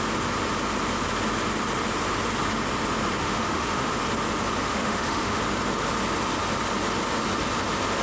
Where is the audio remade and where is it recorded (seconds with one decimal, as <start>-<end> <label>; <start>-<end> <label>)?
0.0-3.2 recorded; 3.2-4.0 remade; 4.0-4.7 recorded; 4.7-5.4 remade; 5.4-8.0 recorded